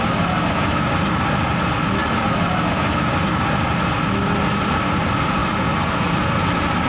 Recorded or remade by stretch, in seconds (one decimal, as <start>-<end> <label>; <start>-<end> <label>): 0.0-6.9 recorded